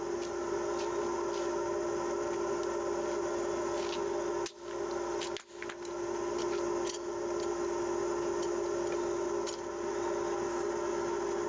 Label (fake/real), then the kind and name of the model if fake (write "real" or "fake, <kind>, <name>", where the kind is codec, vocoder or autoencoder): real